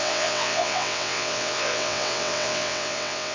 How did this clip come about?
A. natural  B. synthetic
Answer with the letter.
B